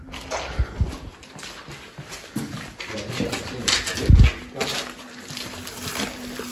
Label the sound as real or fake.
real